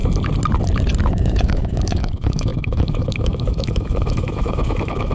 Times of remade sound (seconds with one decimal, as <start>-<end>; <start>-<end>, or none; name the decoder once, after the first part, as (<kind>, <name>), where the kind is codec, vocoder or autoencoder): 1.1-5.1 (autoencoder, DAC-VAE)